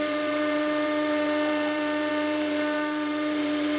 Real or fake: fake